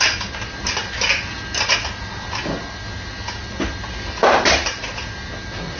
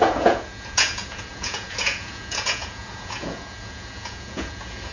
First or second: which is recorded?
first